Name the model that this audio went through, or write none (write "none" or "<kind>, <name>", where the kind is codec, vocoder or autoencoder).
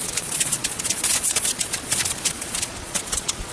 vocoder, Vocos